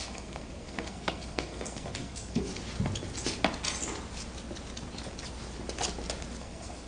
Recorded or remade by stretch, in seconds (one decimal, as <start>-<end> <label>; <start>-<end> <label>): 0.0-2.5 remade; 2.5-6.4 recorded; 6.4-6.9 remade